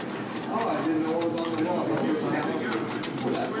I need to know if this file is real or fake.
real